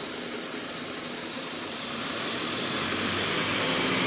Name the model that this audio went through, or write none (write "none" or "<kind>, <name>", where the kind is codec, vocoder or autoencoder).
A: none